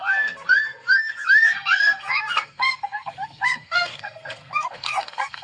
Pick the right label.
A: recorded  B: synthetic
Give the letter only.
B